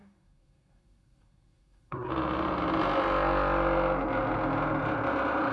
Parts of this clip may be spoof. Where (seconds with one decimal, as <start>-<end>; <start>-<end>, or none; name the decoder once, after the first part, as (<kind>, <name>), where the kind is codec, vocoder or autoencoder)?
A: 0.0-2.1 (codec, SNAC)